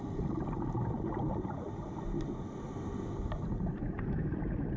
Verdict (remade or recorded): remade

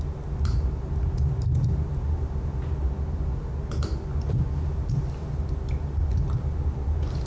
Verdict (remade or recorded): recorded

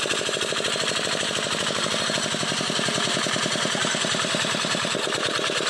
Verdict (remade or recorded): recorded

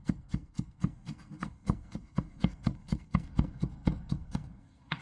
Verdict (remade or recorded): remade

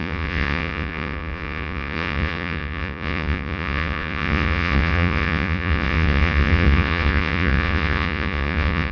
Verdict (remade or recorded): remade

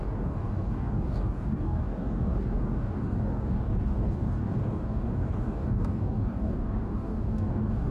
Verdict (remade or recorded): remade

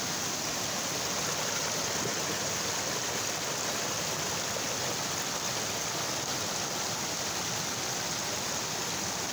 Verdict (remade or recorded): recorded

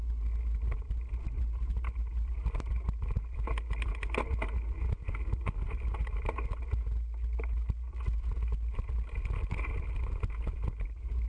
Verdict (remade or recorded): recorded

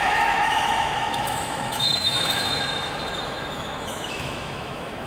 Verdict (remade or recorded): remade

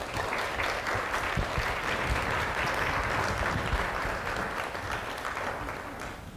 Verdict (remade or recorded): recorded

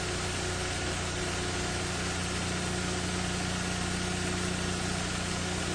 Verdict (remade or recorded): recorded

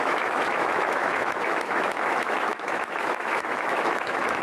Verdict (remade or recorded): remade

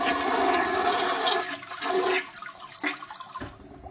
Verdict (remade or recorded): recorded